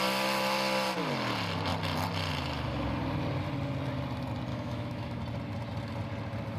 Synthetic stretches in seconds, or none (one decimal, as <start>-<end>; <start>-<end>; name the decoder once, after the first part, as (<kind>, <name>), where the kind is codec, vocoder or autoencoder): 4.5-5.2 (autoencoder, DAC-VAE)